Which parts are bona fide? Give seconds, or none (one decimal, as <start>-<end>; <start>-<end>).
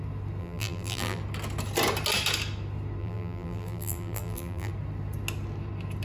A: 0.0-0.4; 1.2-3.0; 4.7-6.0